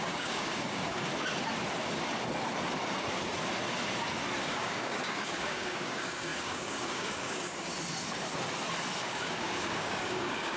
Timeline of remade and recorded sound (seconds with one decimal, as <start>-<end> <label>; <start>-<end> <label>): 0.0-1.1 remade; 1.1-4.4 recorded; 4.4-7.7 remade; 7.7-9.0 recorded; 9.0-10.6 remade